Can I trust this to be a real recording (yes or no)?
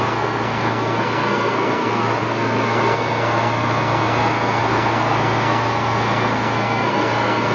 no